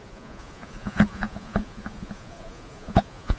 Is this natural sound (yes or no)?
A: no